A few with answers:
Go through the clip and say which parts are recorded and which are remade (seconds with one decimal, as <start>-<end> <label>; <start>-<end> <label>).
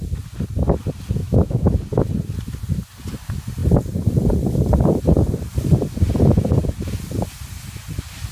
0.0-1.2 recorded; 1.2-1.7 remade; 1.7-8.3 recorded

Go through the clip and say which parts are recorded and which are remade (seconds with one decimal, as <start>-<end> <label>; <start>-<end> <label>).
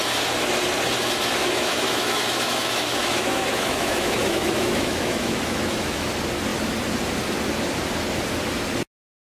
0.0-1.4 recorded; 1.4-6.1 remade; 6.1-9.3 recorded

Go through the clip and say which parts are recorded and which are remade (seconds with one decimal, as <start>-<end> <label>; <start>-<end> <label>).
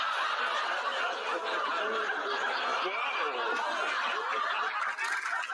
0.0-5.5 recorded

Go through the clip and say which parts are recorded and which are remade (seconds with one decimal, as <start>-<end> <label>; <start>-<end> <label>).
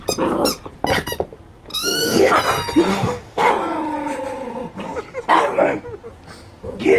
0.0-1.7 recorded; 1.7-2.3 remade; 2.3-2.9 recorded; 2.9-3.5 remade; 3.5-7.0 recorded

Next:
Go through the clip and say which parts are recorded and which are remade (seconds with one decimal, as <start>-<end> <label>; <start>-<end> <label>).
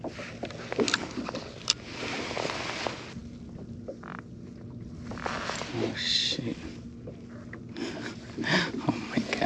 0.0-9.5 recorded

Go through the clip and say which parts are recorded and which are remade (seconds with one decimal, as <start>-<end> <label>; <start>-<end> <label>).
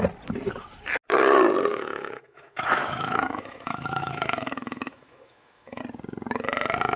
0.0-1.7 recorded; 1.7-5.8 remade; 5.8-7.0 recorded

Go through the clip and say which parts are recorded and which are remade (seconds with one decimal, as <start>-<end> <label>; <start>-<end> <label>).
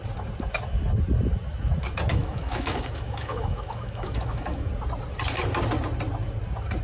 0.0-2.1 recorded; 2.1-4.7 remade; 4.7-6.8 recorded